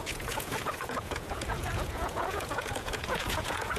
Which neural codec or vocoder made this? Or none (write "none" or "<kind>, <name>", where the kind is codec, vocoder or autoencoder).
vocoder, Vocos